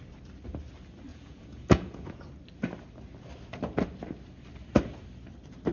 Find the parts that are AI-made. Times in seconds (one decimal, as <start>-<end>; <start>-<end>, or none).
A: 1.1-2.3